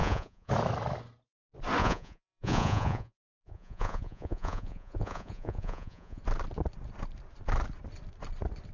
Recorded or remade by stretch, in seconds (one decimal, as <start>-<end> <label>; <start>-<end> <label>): 0.0-0.5 remade; 0.5-1.8 recorded; 1.8-6.2 remade; 6.2-8.7 recorded